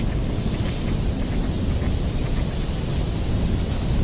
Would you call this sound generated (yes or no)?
yes